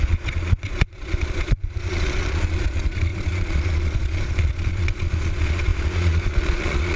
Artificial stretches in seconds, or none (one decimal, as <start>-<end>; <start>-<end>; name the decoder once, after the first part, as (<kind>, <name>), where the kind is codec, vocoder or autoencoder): 0.0-7.0 (vocoder, Vocos)